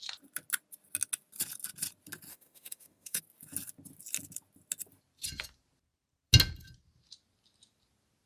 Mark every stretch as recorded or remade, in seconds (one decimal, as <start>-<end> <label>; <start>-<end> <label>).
0.0-2.3 recorded; 2.3-3.2 remade; 3.2-8.3 recorded